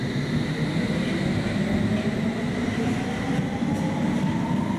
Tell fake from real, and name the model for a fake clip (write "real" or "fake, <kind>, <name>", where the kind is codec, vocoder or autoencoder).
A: real